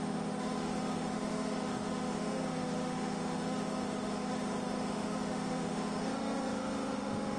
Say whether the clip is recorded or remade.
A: remade